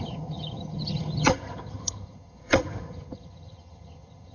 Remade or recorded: remade